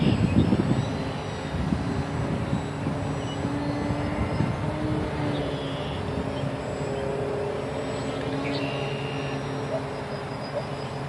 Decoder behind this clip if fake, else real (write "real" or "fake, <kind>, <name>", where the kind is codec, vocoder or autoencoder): real